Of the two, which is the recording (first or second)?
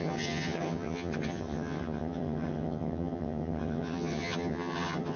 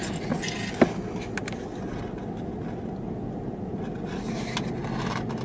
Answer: second